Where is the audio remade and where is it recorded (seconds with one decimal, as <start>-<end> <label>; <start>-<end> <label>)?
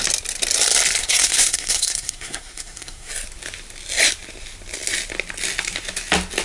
0.0-1.0 recorded; 1.0-3.1 remade; 3.1-6.4 recorded